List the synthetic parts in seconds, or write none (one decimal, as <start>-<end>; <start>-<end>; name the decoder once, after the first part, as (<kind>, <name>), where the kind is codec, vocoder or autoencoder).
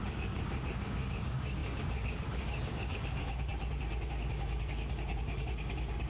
0.0-3.5 (codec, DAC); 4.1-6.1